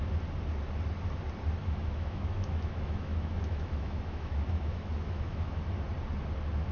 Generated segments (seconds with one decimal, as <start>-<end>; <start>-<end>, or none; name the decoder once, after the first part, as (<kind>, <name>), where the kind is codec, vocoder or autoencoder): 1.6-5.6 (autoencoder, DAC-VAE)